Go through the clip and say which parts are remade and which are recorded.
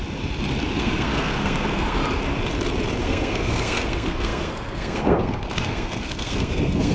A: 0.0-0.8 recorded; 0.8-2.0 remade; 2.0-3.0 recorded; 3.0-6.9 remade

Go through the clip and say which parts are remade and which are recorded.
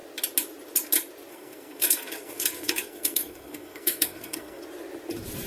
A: 0.0-1.3 recorded; 1.3-4.6 remade; 4.6-5.5 recorded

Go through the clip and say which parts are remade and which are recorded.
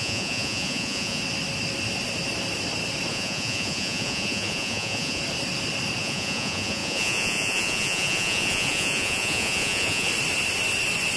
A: 0.0-1.2 remade; 1.2-3.1 recorded; 3.1-5.2 remade; 5.2-6.0 recorded; 6.0-10.1 remade; 10.1-11.2 recorded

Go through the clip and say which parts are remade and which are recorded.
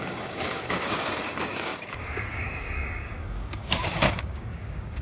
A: 0.0-5.0 remade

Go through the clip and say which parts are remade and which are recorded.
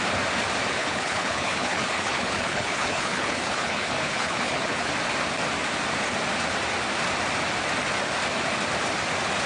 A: 0.0-0.8 recorded; 0.8-4.9 remade; 4.9-9.5 recorded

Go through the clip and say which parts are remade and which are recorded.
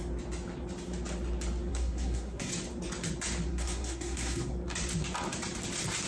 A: 0.0-1.7 recorded; 1.7-2.5 remade; 2.5-3.5 recorded; 3.5-4.5 remade; 4.5-6.1 recorded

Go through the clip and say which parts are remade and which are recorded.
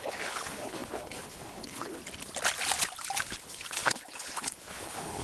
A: 0.0-2.0 remade; 2.0-3.4 recorded; 3.4-5.2 remade